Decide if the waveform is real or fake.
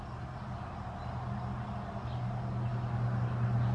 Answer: real